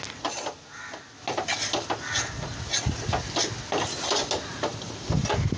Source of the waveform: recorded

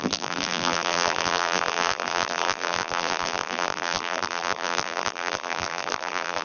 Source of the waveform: remade